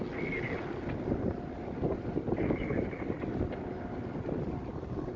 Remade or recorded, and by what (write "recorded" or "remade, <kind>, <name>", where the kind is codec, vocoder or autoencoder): recorded